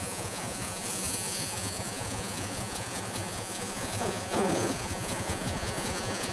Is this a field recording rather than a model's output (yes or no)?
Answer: no